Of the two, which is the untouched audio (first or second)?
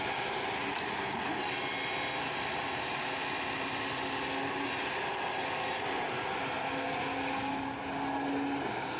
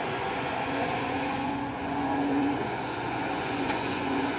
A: first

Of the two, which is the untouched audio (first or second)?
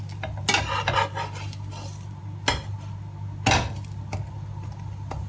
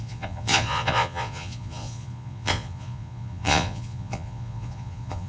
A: first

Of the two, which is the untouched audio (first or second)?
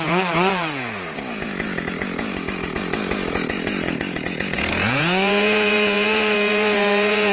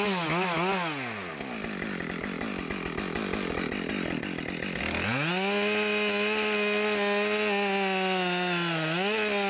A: second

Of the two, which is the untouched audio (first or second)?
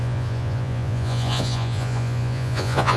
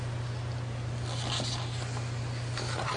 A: second